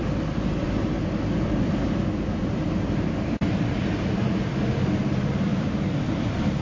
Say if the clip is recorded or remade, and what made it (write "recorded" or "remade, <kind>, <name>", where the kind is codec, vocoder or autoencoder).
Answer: remade, vocoder, BigVGAN v2